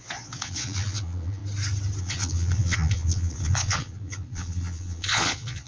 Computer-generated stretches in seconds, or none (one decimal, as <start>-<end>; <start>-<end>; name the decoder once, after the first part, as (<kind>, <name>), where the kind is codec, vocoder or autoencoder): 0.0-1.4 (vocoder, Vocos); 2.0-5.7